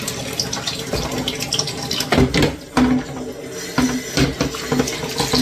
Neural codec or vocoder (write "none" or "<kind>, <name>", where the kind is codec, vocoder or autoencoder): none